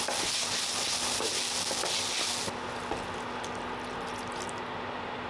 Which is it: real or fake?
real